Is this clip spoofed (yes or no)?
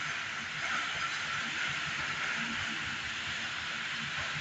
no